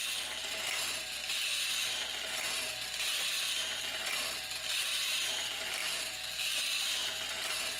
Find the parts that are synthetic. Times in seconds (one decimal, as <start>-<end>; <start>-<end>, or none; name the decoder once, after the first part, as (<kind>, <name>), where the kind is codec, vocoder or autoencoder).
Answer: 4.7-5.8 (vocoder, BigVGAN v2); 6.7-7.8